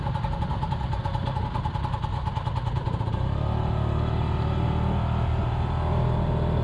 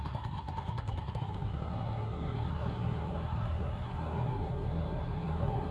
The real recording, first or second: first